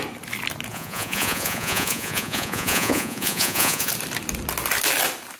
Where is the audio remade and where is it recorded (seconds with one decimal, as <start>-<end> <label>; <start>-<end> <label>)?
0.0-0.7 recorded; 0.7-3.9 remade; 3.9-5.4 recorded